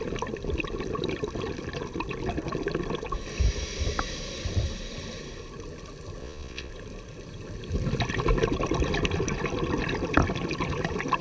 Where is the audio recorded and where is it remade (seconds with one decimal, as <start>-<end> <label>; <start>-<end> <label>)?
0.0-6.2 recorded; 6.2-6.7 remade; 6.7-11.2 recorded